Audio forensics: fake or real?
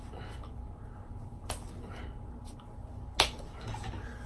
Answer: real